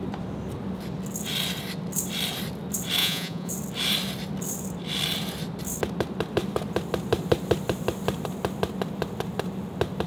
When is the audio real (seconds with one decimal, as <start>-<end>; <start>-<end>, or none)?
0.0-3.0; 3.5-10.1

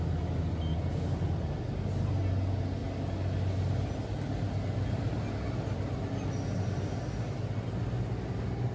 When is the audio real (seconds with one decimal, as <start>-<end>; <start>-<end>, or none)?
0.0-8.7

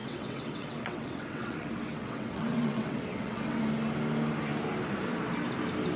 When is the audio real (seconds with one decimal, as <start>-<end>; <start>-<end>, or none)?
3.6-6.0